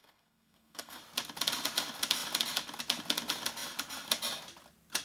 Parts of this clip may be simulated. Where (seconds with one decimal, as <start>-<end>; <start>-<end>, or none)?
0.0-1.0